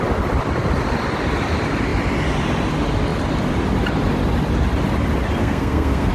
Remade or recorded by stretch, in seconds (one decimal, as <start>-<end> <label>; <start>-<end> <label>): 0.0-5.4 recorded; 5.4-6.1 remade